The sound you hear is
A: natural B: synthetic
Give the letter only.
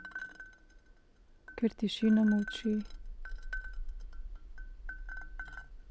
A